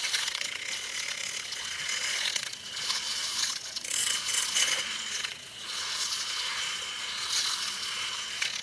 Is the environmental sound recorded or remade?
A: remade